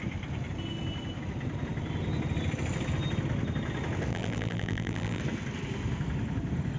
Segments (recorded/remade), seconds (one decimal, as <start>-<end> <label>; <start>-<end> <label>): 0.0-4.1 recorded; 4.1-5.2 remade; 5.2-6.8 recorded